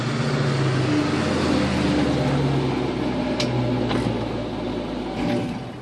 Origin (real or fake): real